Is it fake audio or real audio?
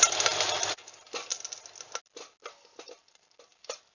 real